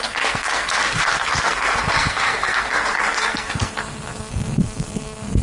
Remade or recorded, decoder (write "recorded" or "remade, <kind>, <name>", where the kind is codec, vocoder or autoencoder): remade, codec, SNAC